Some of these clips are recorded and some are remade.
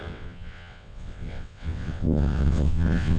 remade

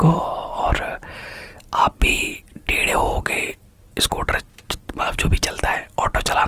recorded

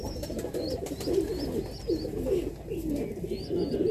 recorded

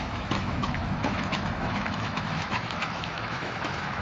remade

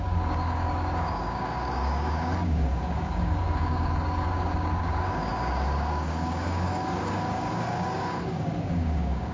remade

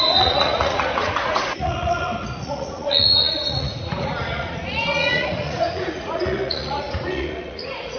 remade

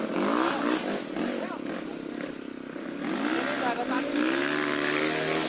recorded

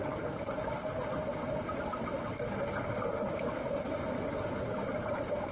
recorded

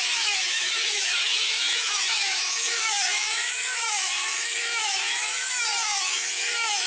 remade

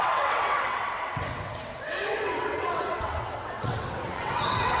remade